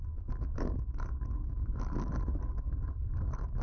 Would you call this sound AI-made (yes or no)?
yes